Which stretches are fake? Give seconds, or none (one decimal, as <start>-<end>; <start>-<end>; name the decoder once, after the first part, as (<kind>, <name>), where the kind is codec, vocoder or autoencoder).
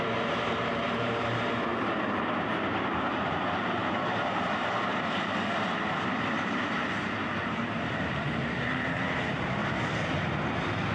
0.0-10.9 (vocoder, BigVGAN v2)